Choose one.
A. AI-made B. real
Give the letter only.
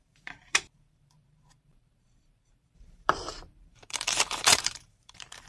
A